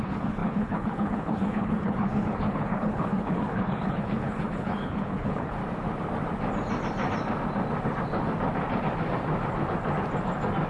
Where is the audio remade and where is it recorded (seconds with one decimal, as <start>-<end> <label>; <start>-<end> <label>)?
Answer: 0.0-5.6 remade; 5.6-10.7 recorded